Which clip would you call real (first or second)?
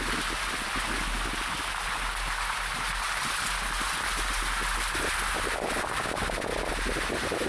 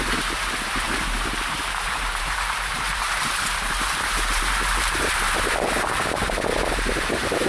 first